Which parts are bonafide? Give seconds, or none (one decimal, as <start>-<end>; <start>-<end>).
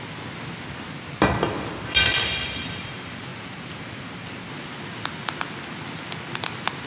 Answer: 0.0-6.9